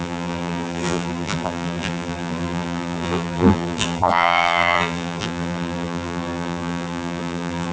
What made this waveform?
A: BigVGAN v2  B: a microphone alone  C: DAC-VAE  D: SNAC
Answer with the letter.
A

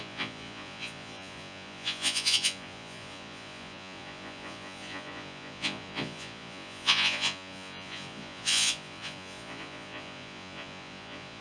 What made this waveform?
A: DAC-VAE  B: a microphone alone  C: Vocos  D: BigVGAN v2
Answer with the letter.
C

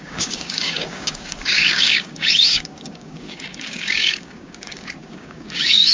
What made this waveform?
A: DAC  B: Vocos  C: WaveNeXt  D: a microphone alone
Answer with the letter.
A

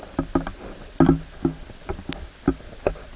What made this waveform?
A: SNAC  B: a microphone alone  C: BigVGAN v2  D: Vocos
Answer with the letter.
B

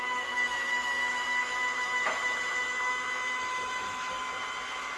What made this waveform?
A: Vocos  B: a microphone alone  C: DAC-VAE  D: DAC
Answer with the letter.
C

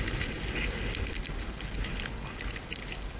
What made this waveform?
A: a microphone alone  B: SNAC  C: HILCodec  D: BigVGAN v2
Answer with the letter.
A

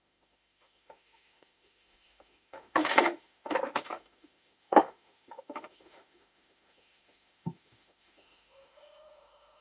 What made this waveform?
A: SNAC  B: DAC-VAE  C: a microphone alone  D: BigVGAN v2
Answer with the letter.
B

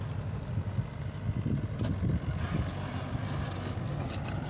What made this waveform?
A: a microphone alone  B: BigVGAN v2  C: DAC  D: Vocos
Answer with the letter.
A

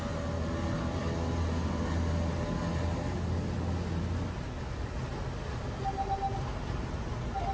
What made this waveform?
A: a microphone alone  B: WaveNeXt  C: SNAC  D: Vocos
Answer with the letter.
A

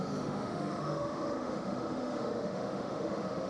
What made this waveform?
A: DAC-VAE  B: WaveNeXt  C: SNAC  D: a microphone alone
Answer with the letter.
A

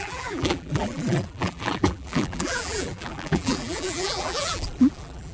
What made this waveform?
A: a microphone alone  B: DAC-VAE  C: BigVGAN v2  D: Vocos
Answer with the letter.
C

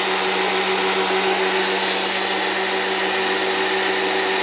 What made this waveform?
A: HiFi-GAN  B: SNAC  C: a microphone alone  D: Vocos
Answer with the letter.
C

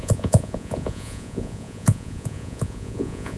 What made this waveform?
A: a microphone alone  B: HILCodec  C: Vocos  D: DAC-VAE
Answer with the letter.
C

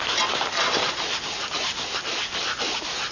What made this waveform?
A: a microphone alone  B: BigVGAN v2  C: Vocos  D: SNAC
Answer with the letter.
B